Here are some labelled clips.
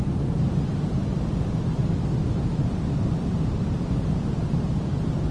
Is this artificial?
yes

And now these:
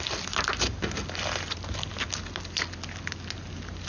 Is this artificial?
no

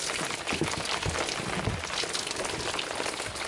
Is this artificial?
no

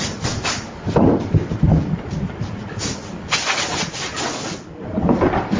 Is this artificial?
no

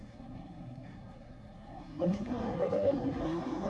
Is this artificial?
yes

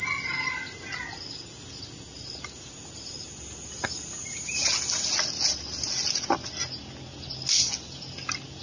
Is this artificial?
no